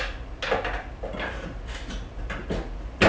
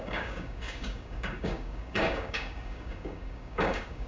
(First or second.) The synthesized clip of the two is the second